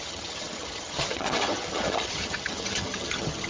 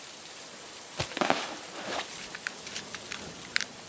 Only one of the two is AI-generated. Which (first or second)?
first